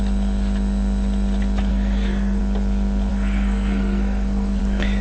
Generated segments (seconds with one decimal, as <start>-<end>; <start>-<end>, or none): 1.7-2.4; 3.1-4.6